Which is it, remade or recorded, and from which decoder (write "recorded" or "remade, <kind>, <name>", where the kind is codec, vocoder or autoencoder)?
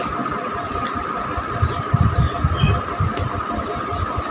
recorded